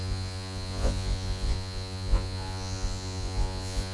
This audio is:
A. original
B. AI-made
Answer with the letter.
B